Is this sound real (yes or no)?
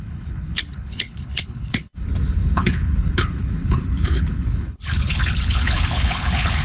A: no